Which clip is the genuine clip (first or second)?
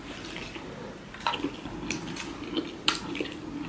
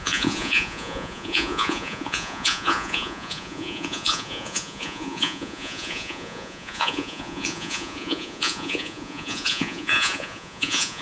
first